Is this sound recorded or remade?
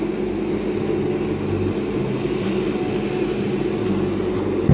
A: recorded